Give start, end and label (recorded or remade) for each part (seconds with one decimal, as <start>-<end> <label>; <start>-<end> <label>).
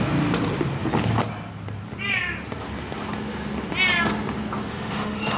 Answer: 0.0-4.7 recorded; 4.7-5.4 remade